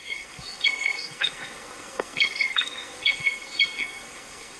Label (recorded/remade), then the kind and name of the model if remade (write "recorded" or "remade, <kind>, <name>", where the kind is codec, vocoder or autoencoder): remade, codec, SNAC